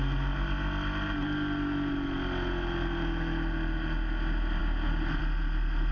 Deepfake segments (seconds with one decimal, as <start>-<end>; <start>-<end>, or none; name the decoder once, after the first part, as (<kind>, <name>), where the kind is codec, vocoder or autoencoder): none

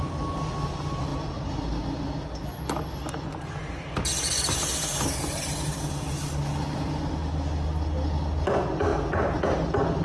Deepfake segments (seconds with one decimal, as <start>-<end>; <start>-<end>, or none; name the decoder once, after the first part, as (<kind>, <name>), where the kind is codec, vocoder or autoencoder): none